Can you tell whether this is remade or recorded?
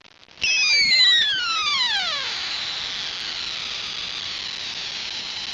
recorded